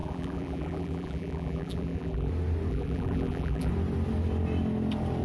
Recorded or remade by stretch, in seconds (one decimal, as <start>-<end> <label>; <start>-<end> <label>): 0.0-2.3 remade; 2.3-2.7 recorded; 2.7-3.7 remade; 3.7-5.2 recorded

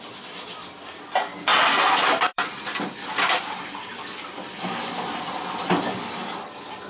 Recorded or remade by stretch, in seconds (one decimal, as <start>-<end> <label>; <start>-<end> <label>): 0.0-1.5 recorded; 1.5-4.8 remade; 4.8-6.9 recorded

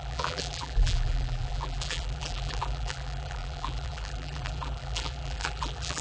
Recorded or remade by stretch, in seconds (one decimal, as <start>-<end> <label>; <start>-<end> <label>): 0.0-6.0 remade

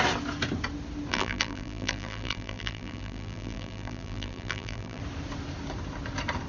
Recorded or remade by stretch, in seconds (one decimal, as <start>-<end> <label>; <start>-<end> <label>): 0.0-1.1 recorded; 1.1-5.0 remade; 5.0-6.5 recorded

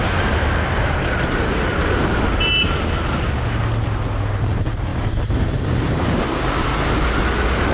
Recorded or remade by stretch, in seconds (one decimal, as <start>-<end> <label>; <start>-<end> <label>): 0.0-4.9 recorded; 4.9-6.2 remade; 6.2-7.7 recorded